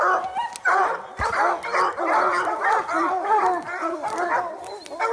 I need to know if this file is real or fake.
real